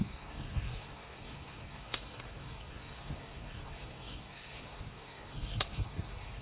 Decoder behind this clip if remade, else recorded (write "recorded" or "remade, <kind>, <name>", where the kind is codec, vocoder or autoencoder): remade, codec, SNAC